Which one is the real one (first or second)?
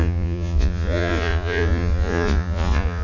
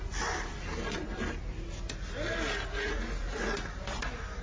second